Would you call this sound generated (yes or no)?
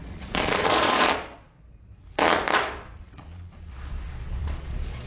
yes